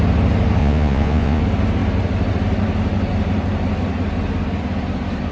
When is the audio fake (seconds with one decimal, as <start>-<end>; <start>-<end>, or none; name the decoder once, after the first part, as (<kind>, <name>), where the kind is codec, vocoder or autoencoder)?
0.6-1.4 (vocoder, Vocos)